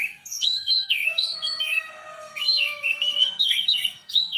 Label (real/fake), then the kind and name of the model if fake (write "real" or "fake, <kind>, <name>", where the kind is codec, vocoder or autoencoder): fake, codec, SNAC